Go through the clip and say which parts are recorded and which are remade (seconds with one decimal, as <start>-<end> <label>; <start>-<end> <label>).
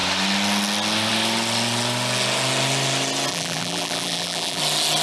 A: 0.0-3.3 recorded; 3.3-4.6 remade; 4.6-5.0 recorded